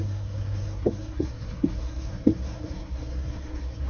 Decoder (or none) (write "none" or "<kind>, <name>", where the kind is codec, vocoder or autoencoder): codec, SNAC